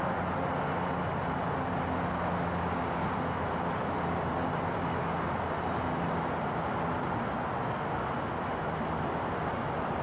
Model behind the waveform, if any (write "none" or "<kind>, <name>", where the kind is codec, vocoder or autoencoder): none